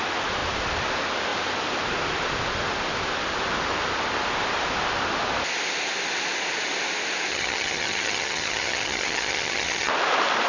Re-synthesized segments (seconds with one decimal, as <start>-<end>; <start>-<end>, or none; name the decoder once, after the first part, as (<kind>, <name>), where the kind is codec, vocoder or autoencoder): 7.3-9.9 (vocoder, HiFi-GAN)